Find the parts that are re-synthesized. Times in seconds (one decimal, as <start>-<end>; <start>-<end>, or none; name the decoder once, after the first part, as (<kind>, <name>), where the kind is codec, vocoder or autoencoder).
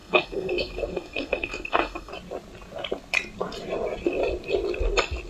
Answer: 0.0-2.1 (codec, SNAC)